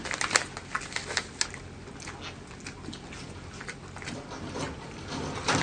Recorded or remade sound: recorded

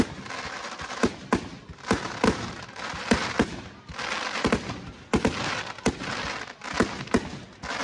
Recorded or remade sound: recorded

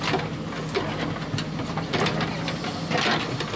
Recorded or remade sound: recorded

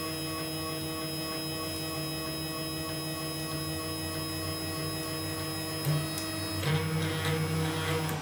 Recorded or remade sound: recorded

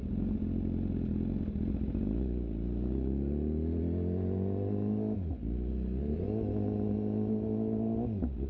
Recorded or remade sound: recorded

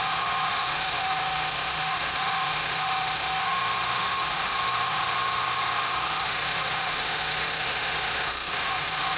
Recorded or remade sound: remade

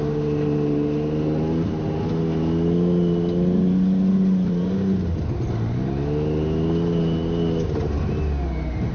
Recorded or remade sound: recorded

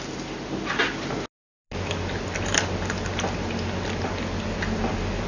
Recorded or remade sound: recorded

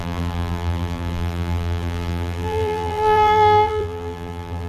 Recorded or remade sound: remade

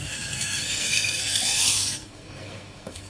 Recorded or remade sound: remade